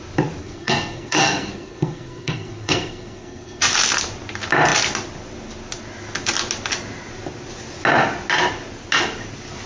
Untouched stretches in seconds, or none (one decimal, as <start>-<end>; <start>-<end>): 0.0-0.4; 3.6-9.7